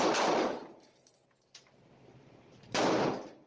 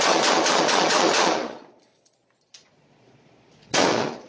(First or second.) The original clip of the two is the first